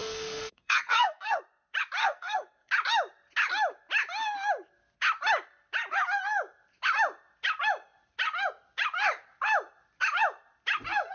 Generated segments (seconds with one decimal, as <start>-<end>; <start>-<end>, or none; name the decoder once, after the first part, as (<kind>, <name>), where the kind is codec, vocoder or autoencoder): 0.0-1.4 (codec, SNAC); 2.0-2.7